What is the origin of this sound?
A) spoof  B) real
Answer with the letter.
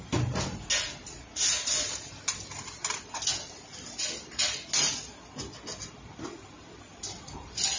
B